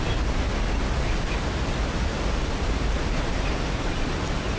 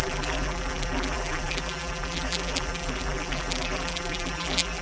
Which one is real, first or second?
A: first